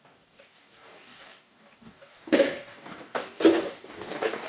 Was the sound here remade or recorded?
remade